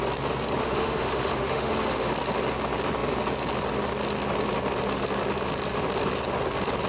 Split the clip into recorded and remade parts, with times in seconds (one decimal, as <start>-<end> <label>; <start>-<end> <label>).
0.0-0.6 recorded; 0.6-2.1 remade; 2.1-6.9 recorded

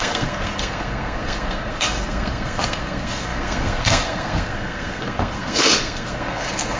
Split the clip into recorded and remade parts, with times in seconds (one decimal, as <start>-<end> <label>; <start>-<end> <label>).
0.0-6.8 remade

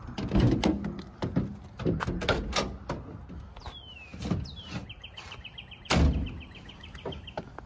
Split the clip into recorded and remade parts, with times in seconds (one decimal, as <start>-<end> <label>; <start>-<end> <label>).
0.0-7.7 recorded

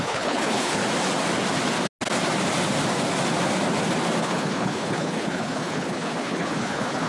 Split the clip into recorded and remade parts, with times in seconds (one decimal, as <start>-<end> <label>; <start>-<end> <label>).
0.0-0.8 remade; 0.8-4.2 recorded; 4.2-7.1 remade

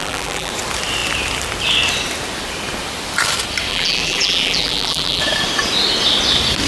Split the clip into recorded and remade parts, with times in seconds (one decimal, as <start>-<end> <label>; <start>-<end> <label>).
0.0-0.5 remade; 0.5-3.7 recorded; 3.7-5.2 remade; 5.2-6.7 recorded

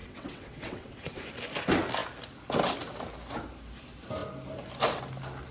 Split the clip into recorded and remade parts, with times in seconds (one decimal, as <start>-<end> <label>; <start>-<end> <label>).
0.0-1.2 remade; 1.2-5.5 recorded